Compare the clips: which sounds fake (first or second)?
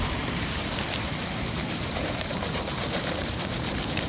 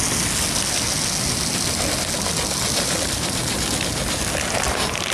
first